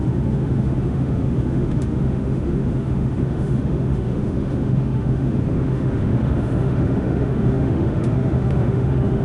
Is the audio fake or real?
fake